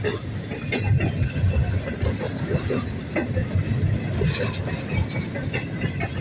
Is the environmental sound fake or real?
real